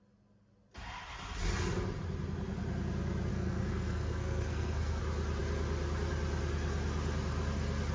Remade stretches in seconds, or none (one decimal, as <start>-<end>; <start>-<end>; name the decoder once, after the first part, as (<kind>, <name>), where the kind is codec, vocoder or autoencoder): 3.3-5.0 (codec, SNAC)